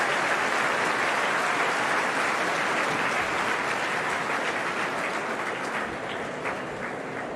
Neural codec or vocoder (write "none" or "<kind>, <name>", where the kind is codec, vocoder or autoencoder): none